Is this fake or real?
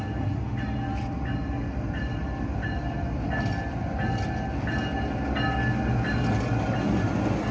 real